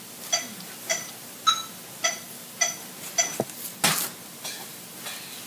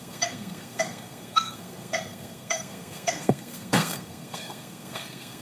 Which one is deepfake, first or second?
second